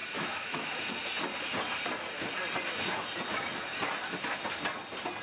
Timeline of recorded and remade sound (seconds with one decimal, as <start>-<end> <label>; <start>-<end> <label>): 0.0-0.9 remade; 0.9-5.2 recorded